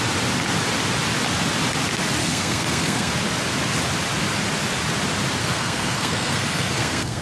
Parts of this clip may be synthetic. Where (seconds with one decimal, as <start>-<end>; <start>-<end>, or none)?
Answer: 2.2-3.1; 5.4-7.2